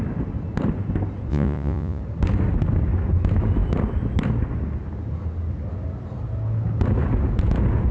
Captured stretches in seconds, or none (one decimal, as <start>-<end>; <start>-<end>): 0.0-1.3; 2.0-7.9

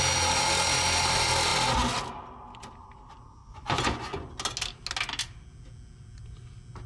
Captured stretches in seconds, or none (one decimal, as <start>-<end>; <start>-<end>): 0.0-3.4; 4.3-6.9

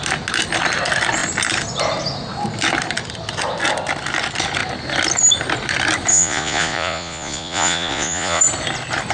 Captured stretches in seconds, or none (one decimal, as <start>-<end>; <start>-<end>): 0.0-6.1; 8.4-9.1

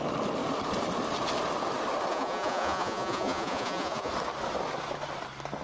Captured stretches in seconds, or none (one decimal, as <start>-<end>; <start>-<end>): 0.0-2.1; 4.1-5.6

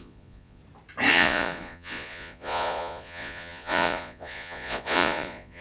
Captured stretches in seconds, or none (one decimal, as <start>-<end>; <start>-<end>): 0.6-1.1

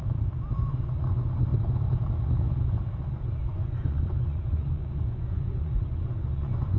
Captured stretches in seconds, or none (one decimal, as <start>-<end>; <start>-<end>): 0.0-0.6; 1.5-3.0